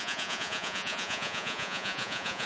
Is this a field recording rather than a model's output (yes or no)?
no